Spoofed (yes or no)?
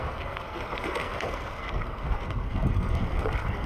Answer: yes